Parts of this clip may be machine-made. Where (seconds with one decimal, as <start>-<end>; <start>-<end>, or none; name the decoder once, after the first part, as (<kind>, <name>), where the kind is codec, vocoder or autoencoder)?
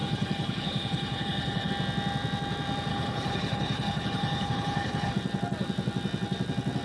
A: 0.0-1.7 (codec, HILCodec); 2.9-5.1